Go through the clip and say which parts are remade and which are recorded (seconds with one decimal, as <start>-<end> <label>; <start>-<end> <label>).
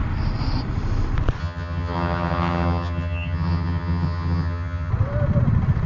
0.0-1.4 recorded; 1.4-4.9 remade; 4.9-5.9 recorded